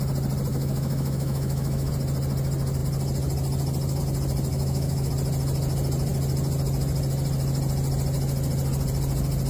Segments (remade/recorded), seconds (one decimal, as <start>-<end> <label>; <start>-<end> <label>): 0.0-0.5 recorded; 0.5-1.9 remade; 1.9-4.5 recorded; 4.5-5.1 remade; 5.1-9.5 recorded